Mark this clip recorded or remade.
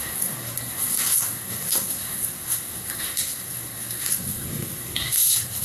remade